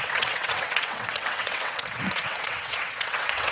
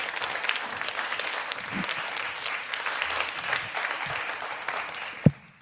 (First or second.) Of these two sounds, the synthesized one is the first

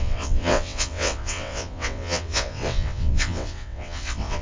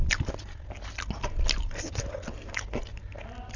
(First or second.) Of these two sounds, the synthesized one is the first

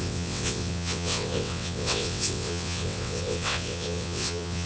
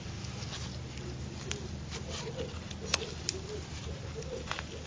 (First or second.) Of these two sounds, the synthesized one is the first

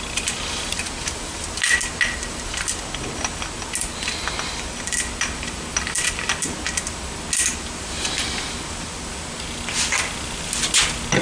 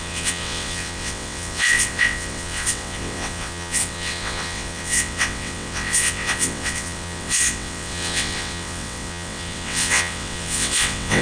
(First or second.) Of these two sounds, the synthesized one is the second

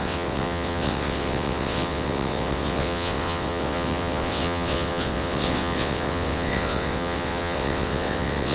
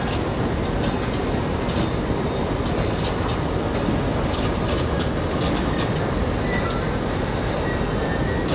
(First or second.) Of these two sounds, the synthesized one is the first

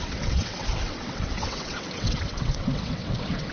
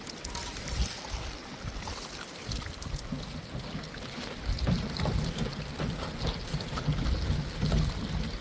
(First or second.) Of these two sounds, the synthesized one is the first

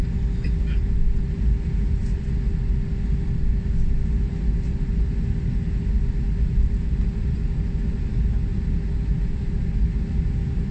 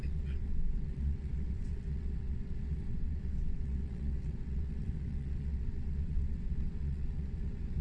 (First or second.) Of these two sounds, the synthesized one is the second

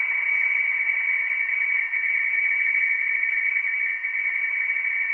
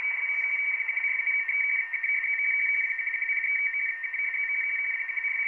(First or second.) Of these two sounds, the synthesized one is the first